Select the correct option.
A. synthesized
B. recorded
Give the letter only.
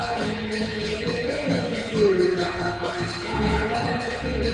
A